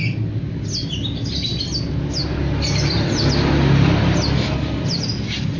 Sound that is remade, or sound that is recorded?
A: recorded